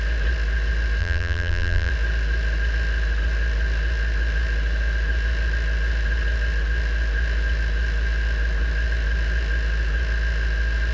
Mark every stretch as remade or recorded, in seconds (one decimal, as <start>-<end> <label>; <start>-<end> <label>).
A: 0.0-1.0 recorded; 1.0-1.9 remade; 1.9-10.9 recorded